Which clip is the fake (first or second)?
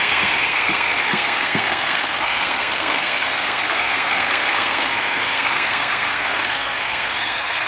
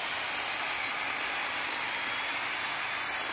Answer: first